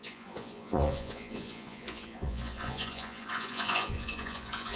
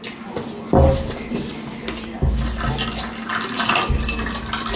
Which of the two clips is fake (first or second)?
first